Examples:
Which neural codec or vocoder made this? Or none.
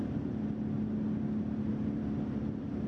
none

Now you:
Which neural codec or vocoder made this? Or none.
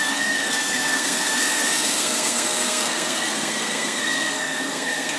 codec, SNAC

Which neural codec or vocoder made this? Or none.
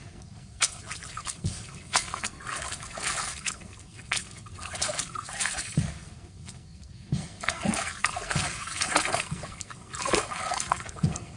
codec, SNAC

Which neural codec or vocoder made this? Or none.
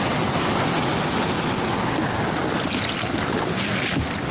none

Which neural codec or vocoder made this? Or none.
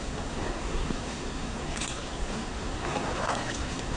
codec, SNAC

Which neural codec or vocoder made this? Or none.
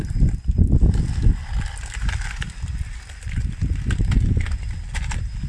none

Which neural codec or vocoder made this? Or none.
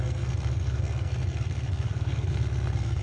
codec, SNAC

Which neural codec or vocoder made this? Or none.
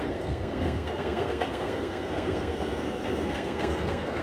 codec, SNAC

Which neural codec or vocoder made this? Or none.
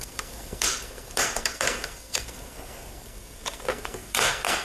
codec, SNAC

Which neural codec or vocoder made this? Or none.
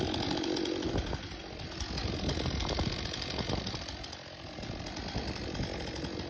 none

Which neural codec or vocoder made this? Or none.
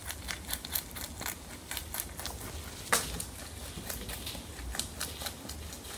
none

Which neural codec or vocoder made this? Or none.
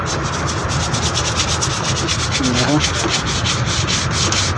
none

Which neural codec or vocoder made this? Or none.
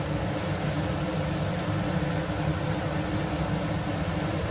none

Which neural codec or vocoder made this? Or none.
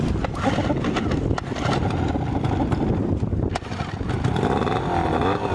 none